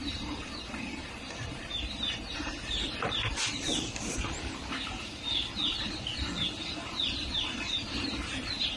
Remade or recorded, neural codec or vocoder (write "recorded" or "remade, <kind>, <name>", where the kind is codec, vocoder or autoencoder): remade, vocoder, BigVGAN v2